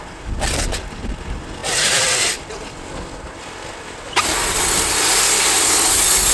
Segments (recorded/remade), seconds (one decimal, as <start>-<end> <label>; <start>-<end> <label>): 0.0-6.3 recorded